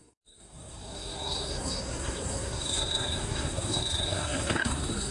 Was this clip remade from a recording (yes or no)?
yes